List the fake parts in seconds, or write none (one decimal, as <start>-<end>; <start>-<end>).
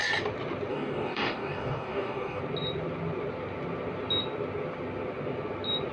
0.7-2.4